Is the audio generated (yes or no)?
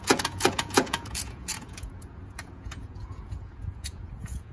yes